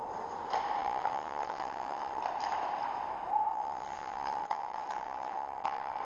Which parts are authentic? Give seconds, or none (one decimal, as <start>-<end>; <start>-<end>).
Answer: 0.0-0.8; 2.2-3.5